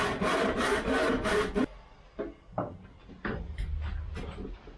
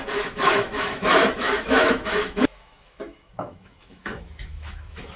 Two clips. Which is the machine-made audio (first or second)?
second